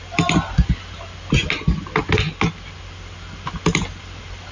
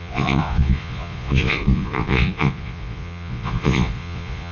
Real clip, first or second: first